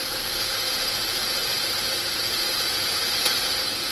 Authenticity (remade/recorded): remade